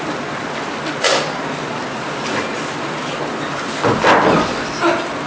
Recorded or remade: recorded